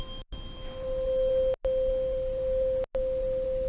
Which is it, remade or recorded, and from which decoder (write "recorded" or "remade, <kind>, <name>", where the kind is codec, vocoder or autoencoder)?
recorded